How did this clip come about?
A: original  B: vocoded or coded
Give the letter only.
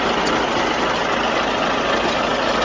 A